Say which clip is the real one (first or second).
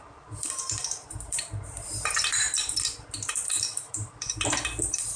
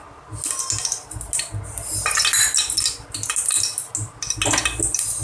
second